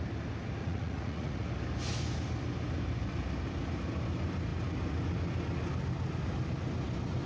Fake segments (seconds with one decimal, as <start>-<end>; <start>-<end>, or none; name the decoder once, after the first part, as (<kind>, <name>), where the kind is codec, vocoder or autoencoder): 0.6-1.5 (vocoder, Vocos)